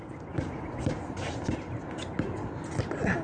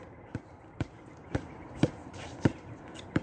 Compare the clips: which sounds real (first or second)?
first